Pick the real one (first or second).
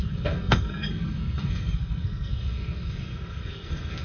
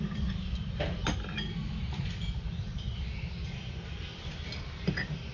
second